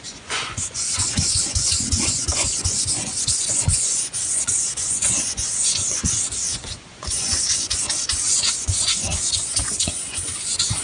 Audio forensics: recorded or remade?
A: remade